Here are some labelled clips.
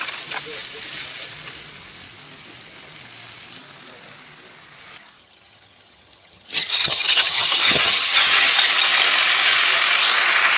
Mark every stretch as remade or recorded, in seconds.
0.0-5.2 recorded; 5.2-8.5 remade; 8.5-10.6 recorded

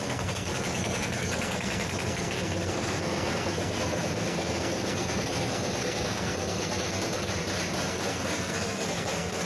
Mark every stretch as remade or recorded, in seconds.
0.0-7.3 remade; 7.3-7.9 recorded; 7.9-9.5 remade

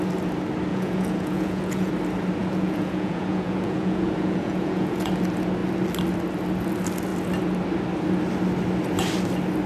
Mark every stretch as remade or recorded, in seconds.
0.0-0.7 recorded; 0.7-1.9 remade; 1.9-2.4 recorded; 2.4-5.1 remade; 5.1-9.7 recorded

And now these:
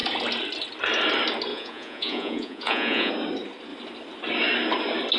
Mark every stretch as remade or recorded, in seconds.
0.0-1.5 recorded; 1.5-3.1 remade; 3.1-5.2 recorded

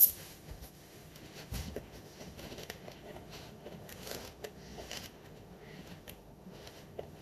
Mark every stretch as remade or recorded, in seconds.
0.0-7.2 remade

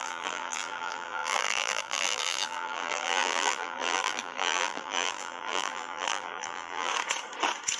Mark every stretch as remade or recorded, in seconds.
0.0-6.9 remade; 6.9-7.8 recorded

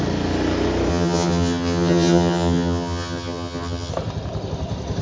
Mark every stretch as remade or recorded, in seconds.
0.0-0.9 recorded; 0.9-3.9 remade; 3.9-5.0 recorded